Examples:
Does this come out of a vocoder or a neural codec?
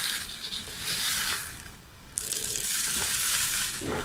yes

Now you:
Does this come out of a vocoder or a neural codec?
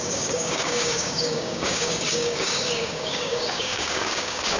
yes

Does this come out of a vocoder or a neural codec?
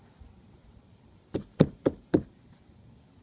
no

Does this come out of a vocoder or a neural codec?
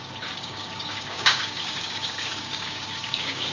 yes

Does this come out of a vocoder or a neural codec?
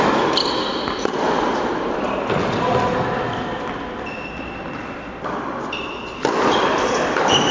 no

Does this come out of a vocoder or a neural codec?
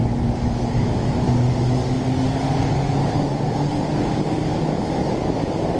yes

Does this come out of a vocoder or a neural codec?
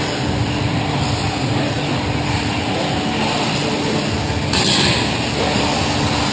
no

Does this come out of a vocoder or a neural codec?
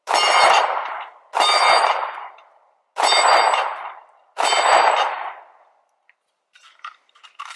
no